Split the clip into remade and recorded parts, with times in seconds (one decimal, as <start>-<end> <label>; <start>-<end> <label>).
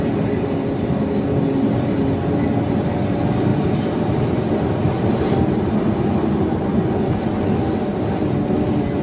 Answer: 0.0-3.5 recorded; 3.5-5.7 remade; 5.7-9.0 recorded